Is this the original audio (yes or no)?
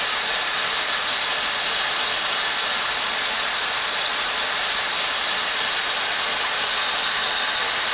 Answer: yes